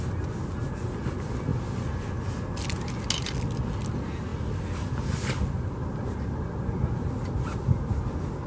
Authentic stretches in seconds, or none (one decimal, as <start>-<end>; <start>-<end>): 0.0-8.5